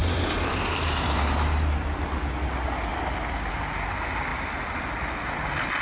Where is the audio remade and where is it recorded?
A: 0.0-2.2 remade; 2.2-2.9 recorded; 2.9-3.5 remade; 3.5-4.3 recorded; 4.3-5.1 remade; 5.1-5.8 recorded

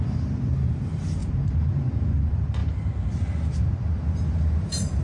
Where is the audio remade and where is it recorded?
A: 0.0-2.6 remade; 2.6-3.6 recorded; 3.6-5.0 remade

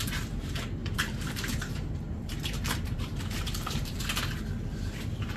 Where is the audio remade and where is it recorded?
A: 0.0-0.8 recorded; 0.8-4.0 remade; 4.0-5.4 recorded

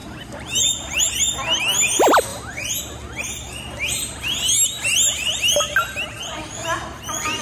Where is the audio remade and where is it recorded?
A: 0.0-1.0 remade; 1.0-2.3 recorded; 2.3-2.8 remade; 2.8-7.4 recorded

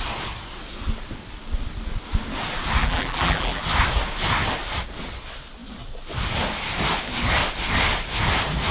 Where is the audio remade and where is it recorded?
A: 0.0-2.8 recorded; 2.8-3.6 remade; 3.6-8.7 recorded

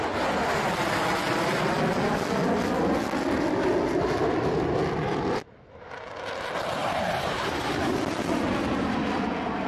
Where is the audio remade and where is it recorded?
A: 0.0-6.8 recorded; 6.8-8.0 remade; 8.0-9.7 recorded

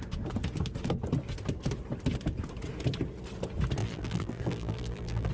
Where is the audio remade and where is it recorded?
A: 0.0-3.8 recorded; 3.8-5.3 remade